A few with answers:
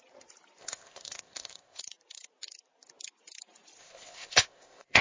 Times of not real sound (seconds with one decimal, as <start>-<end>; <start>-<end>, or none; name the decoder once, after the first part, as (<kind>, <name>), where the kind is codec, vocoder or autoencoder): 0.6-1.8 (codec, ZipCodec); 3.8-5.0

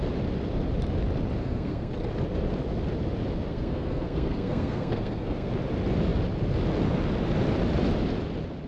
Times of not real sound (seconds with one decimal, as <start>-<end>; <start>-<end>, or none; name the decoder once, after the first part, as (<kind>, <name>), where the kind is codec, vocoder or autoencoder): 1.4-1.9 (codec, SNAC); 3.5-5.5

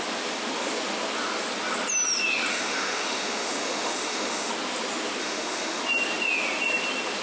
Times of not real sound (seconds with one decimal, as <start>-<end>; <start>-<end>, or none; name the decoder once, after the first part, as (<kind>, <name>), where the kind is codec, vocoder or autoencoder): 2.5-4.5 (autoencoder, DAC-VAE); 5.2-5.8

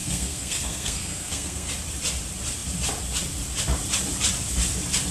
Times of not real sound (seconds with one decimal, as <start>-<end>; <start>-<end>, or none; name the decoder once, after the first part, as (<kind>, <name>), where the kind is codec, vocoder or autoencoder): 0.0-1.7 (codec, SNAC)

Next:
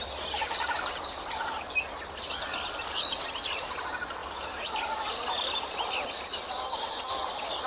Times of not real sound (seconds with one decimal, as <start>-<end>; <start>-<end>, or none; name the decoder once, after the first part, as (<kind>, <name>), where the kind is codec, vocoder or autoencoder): none

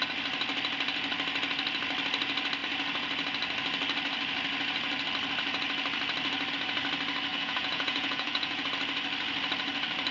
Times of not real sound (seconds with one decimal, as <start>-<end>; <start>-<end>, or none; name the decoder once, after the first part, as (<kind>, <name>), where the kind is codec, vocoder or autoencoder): 7.3-8.6 (vocoder, Vocos)

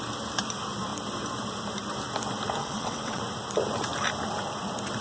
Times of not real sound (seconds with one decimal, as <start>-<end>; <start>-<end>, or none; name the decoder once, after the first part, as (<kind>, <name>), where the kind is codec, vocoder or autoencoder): 2.6-3.2 (vocoder, WaveNeXt)